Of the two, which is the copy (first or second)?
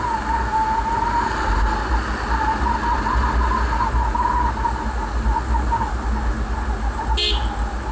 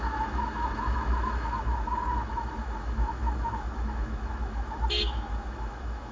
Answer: second